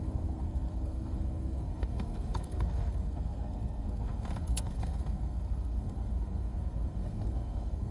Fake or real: fake